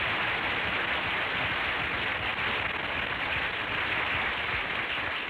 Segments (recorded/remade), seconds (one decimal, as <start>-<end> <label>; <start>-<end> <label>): 0.0-5.3 recorded